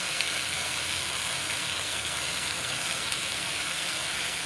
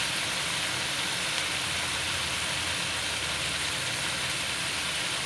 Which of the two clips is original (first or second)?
second